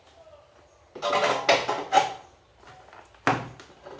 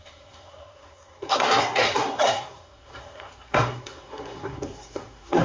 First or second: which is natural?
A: first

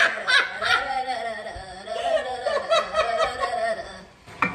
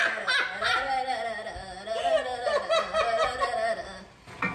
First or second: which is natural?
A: second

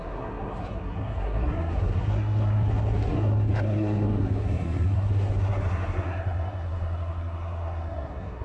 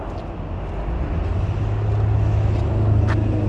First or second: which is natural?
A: second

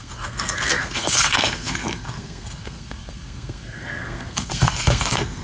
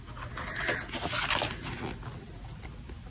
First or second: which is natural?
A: second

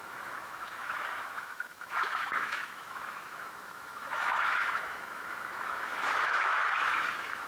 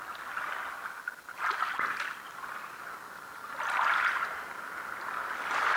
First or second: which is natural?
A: second